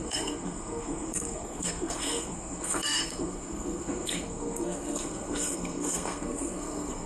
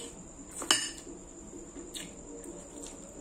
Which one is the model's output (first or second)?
first